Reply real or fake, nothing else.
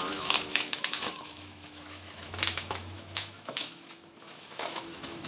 fake